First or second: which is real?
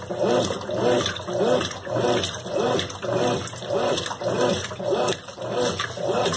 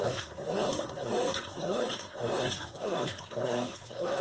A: first